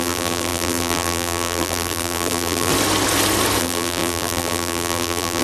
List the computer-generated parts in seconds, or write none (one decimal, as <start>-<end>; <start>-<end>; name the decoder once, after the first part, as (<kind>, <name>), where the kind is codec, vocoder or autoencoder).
0.0-2.7 (vocoder, BigVGAN v2); 3.6-5.4